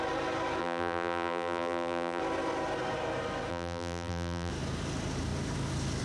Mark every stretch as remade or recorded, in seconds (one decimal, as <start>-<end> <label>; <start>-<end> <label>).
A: 0.0-0.6 recorded; 0.6-2.2 remade; 2.2-3.5 recorded; 3.5-4.5 remade; 4.5-6.0 recorded